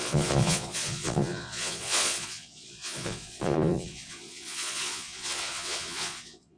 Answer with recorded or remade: remade